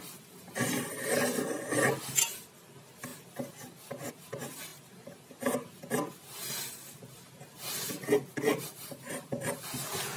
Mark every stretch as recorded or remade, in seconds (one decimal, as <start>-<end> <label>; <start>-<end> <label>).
0.0-10.2 recorded